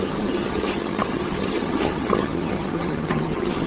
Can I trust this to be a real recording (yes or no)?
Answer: no